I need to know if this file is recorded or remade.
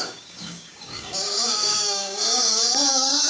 remade